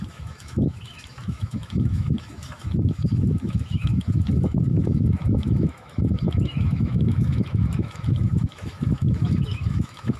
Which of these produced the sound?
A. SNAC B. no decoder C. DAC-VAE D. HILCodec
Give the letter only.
C